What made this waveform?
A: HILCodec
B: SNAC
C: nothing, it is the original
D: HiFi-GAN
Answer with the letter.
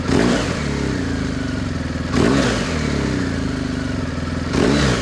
C